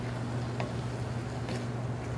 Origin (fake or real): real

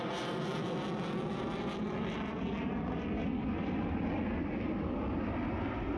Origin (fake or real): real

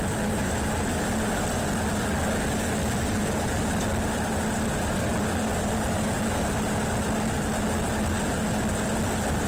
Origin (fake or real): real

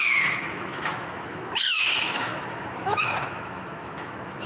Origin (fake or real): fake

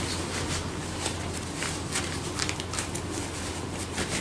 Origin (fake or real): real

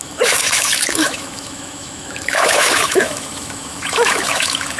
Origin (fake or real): fake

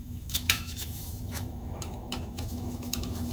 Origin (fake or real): fake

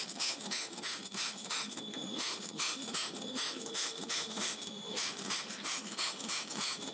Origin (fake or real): fake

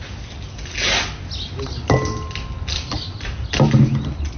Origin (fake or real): real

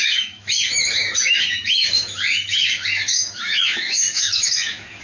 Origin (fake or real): fake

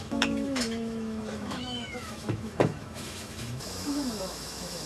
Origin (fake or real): fake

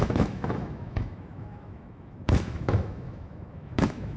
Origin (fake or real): fake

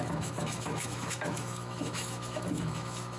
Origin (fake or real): fake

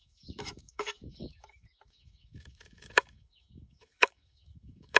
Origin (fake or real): fake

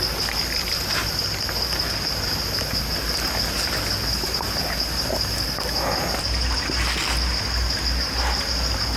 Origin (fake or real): real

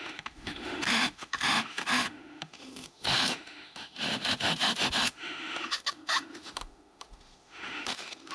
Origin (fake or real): fake